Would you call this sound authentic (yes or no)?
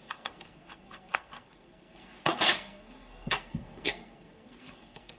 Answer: no